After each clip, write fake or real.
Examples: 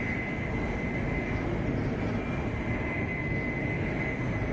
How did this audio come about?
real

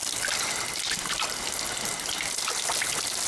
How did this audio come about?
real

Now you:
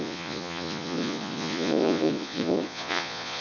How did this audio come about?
fake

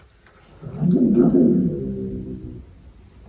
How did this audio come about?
real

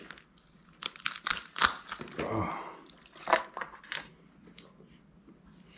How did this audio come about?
real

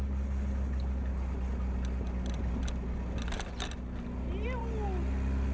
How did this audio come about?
real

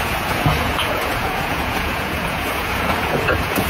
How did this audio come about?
fake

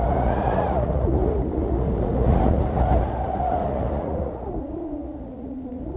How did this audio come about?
fake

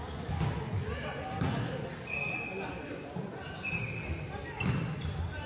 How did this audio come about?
real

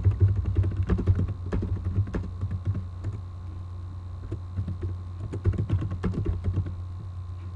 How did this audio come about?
real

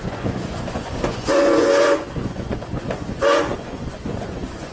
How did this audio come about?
fake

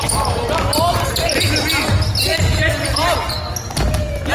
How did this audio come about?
real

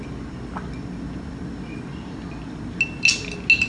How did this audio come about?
real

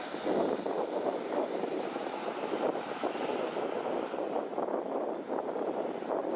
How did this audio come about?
real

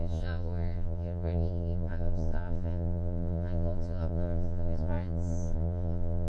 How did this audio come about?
fake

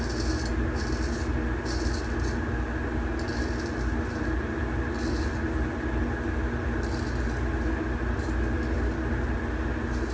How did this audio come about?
real